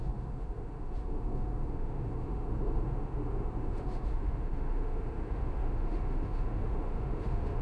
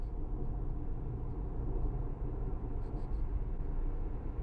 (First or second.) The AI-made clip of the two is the first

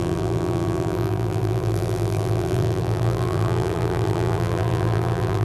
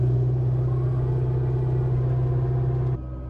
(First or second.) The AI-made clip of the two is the first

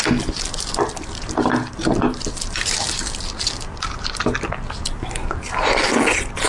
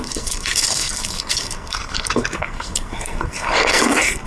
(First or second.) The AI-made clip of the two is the second